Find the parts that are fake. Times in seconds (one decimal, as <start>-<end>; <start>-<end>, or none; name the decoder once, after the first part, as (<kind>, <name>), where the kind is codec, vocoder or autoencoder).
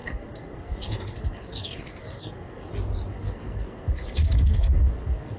0.0-2.7 (codec, SNAC); 3.1-5.4